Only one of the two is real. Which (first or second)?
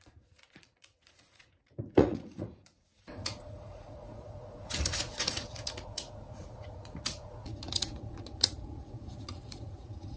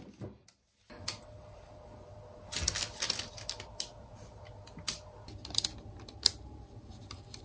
second